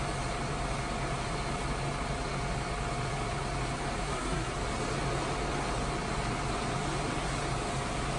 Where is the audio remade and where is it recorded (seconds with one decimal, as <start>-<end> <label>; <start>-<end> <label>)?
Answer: 0.0-4.0 recorded; 4.0-4.5 remade; 4.5-8.2 recorded